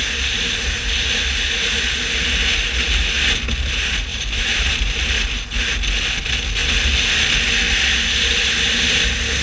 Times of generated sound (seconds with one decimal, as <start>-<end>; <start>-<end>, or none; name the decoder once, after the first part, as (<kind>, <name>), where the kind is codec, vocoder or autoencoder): 4.1-5.4 (vocoder, BigVGAN v2); 6.6-7.2